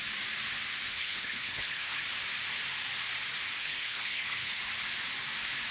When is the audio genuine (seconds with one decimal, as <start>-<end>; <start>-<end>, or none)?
0.0-0.9; 2.0-3.6; 4.6-5.7